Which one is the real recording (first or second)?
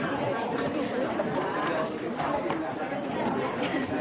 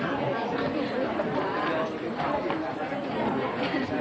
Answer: second